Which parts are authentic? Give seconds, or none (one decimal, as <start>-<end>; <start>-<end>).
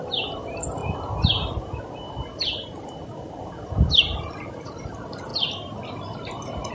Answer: 0.8-4.8; 5.3-6.7